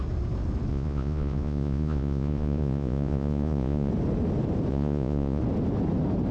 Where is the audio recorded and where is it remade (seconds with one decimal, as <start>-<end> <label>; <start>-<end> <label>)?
0.0-0.7 recorded; 0.7-3.9 remade; 3.9-4.7 recorded; 4.7-5.4 remade; 5.4-6.3 recorded

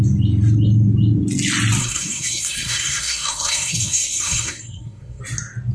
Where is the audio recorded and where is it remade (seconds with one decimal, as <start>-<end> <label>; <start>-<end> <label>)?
0.0-1.8 recorded; 1.8-5.2 remade; 5.2-5.7 recorded

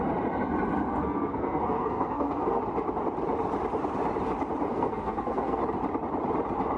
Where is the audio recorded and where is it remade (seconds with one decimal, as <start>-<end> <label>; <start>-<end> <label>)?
0.0-0.9 recorded; 0.9-2.6 remade; 2.6-4.7 recorded; 4.7-5.6 remade; 5.6-6.8 recorded

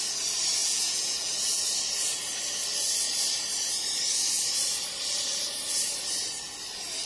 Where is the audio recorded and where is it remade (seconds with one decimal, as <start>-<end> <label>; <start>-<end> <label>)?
0.0-0.6 recorded; 0.6-1.3 remade; 1.3-7.1 recorded

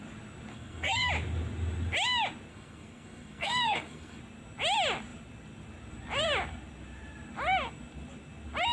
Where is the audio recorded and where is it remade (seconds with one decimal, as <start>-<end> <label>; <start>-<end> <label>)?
0.0-0.5 recorded; 0.5-1.1 remade; 1.1-2.5 recorded; 2.5-4.2 remade; 4.2-8.7 recorded

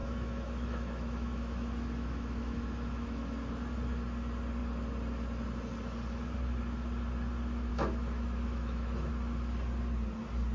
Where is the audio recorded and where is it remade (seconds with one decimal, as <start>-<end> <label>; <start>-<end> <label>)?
0.0-3.5 remade; 3.5-7.7 recorded; 7.7-9.1 remade; 9.1-10.5 recorded

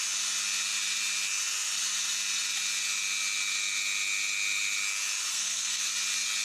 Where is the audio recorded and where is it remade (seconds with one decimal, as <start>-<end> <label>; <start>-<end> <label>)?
0.0-5.3 recorded; 5.3-5.8 remade; 5.8-6.4 recorded

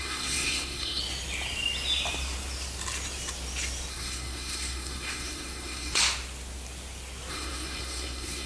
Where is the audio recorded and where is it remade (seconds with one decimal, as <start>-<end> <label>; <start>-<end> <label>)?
0.0-1.0 remade; 1.0-3.9 recorded; 3.9-6.0 remade; 6.0-7.3 recorded; 7.3-8.5 remade